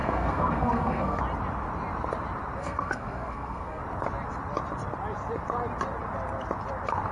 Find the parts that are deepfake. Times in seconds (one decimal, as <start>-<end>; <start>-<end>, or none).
0.0-1.2; 2.6-3.8